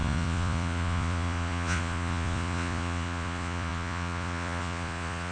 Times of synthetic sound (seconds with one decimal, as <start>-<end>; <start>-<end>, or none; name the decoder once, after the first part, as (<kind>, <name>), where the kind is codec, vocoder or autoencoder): 0.0-5.3 (vocoder, Vocos)